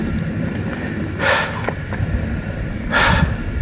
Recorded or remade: recorded